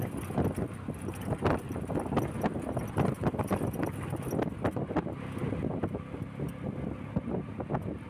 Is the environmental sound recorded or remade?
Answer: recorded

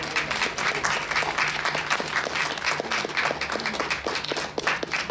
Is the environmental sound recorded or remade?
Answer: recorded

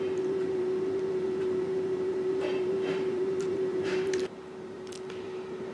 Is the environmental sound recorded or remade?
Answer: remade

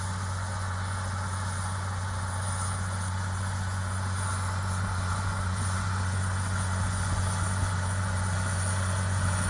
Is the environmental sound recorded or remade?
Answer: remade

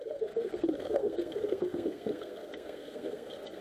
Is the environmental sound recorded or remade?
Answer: remade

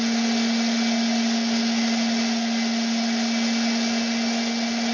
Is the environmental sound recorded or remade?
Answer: recorded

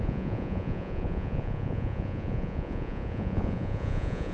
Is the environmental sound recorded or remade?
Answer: remade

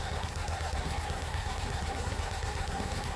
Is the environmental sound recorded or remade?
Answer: remade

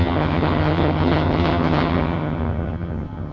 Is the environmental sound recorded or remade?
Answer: remade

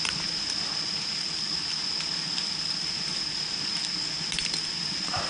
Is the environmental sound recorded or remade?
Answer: remade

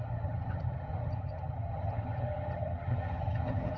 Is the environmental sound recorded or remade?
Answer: remade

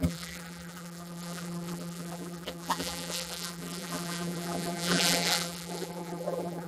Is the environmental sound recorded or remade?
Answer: remade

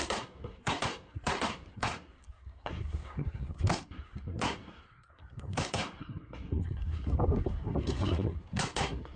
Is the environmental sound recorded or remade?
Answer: remade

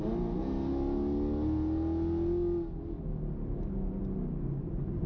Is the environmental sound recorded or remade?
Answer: recorded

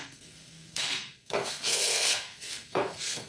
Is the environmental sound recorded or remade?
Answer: remade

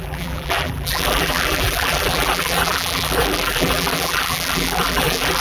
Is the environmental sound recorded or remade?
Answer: remade